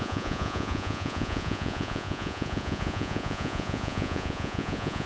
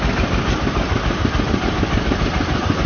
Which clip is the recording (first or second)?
second